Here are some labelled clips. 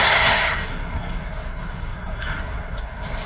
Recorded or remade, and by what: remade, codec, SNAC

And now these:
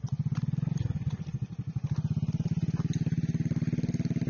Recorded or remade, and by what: recorded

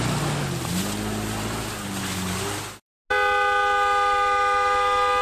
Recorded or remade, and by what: recorded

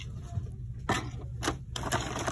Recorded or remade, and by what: recorded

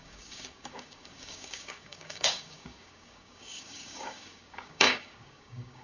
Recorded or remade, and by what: remade, codec, DAC